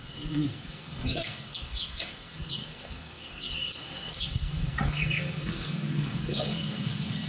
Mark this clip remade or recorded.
remade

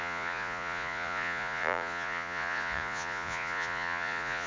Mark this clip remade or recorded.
remade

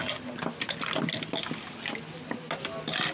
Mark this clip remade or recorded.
recorded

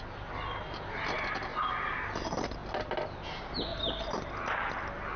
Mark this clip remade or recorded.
recorded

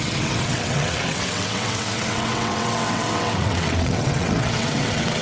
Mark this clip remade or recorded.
remade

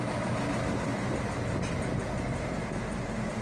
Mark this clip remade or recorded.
remade